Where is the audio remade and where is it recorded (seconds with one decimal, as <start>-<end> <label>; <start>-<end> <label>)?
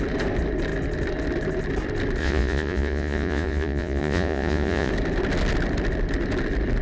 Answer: 0.0-2.2 recorded; 2.2-4.9 remade; 4.9-6.8 recorded